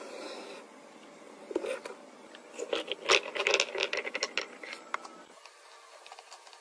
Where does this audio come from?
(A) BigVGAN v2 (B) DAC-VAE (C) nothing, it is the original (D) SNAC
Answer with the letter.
C